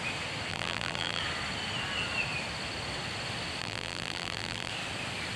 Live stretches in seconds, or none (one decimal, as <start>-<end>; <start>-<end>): 0.0-0.5; 1.2-3.6; 4.7-5.4